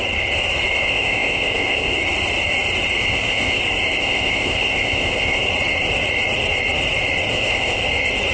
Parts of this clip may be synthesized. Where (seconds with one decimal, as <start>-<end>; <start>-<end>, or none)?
0.8-2.0; 3.0-3.6; 4.0-5.4; 7.3-7.8